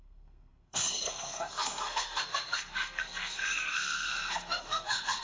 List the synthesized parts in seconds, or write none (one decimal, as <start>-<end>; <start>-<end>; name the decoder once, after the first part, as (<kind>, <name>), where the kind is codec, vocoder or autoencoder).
0.0-5.2 (codec, SNAC)